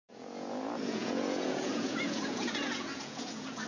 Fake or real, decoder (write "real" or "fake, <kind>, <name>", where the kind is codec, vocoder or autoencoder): fake, vocoder, Vocos